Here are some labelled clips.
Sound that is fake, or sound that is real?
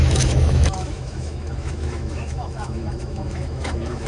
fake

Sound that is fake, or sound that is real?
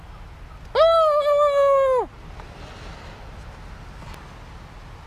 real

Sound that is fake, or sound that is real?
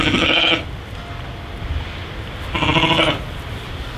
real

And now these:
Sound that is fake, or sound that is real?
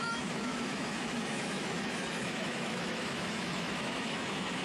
fake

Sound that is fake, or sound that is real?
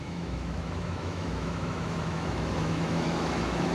fake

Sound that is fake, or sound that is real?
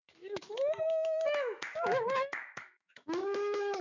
fake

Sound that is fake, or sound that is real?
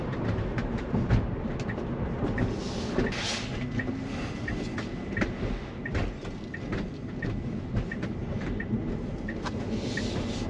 real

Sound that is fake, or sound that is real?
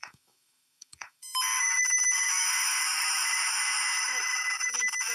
fake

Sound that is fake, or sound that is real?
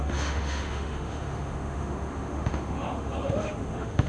fake